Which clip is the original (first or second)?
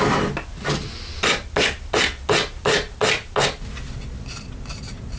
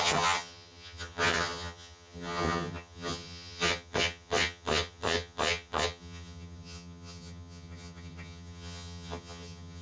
first